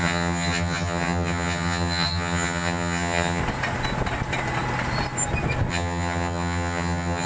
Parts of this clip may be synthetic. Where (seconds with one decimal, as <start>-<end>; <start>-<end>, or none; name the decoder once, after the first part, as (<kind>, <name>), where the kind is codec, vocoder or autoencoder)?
0.0-3.4 (vocoder, HiFi-GAN); 5.7-7.3